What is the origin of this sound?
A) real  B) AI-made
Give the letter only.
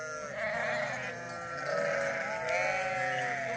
A